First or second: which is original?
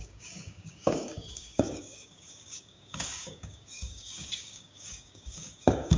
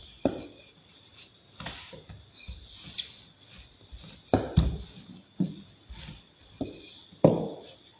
second